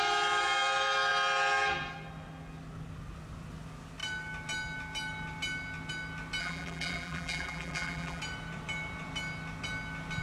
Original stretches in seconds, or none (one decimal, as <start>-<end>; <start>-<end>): 0.0-6.4; 8.2-10.2